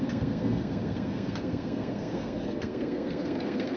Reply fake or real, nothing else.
fake